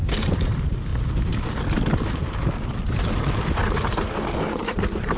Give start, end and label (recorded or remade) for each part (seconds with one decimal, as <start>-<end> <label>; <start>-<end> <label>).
0.0-5.2 recorded